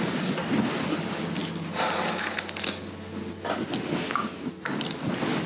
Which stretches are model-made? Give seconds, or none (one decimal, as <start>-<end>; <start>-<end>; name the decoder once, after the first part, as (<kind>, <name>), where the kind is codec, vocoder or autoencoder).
none